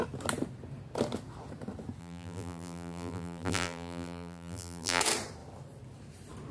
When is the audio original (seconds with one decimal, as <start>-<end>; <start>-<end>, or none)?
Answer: 0.0-2.0; 5.0-6.5